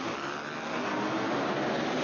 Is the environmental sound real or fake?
real